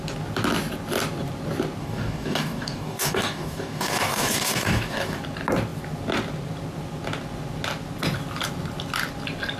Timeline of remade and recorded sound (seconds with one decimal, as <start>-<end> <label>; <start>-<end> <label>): 0.0-1.8 recorded; 1.8-5.2 remade; 5.2-9.6 recorded